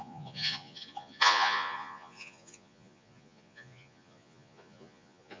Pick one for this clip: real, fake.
fake